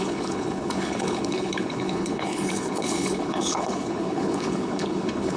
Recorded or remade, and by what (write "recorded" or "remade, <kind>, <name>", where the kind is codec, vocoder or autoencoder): remade, codec, HILCodec